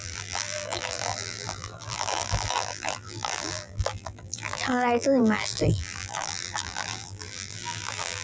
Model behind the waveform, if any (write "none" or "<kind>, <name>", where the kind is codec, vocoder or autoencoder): vocoder, BigVGAN v2